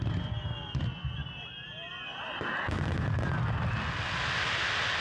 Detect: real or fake real